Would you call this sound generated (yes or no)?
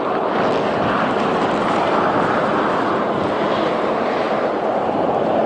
no